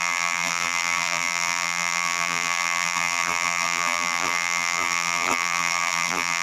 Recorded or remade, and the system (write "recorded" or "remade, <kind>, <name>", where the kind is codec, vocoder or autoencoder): remade, vocoder, BigVGAN v2